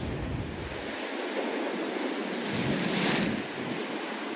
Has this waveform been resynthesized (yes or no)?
no